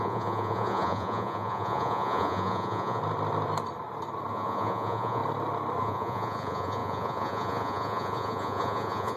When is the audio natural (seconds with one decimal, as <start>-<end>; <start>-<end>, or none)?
3.0-4.3; 5.2-5.8